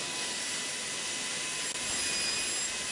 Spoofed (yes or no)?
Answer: no